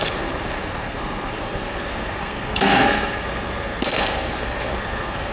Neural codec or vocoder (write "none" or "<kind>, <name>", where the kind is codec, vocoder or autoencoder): codec, SNAC